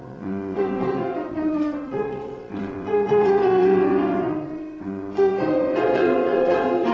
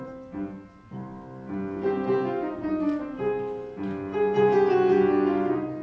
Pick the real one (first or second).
second